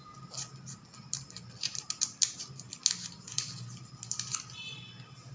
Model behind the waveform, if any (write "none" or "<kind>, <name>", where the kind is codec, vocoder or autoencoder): none